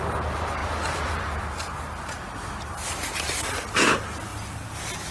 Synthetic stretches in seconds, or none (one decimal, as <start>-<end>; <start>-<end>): 0.6-1.7